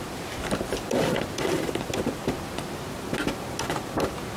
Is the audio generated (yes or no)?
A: no